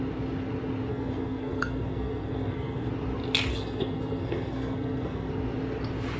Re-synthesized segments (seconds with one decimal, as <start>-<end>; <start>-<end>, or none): 0.9-2.9; 3.5-5.3